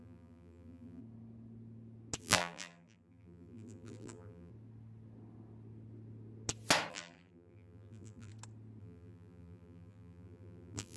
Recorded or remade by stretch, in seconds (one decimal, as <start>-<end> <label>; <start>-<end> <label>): 0.0-1.0 remade; 1.0-2.2 recorded; 2.2-4.5 remade; 4.5-6.9 recorded; 6.9-8.3 remade; 8.3-8.8 recorded; 8.8-11.0 remade